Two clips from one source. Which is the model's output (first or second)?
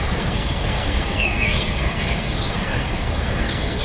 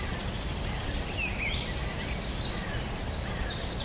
first